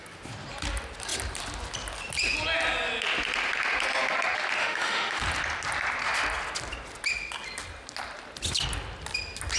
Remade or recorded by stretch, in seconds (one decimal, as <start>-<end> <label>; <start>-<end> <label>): 0.0-4.6 recorded; 4.6-5.2 remade; 5.2-9.6 recorded